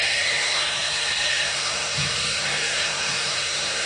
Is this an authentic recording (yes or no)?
no